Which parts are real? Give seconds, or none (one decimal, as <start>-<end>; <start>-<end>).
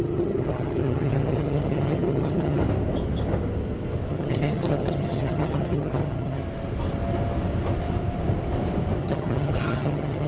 2.6-4.1; 6.4-9.0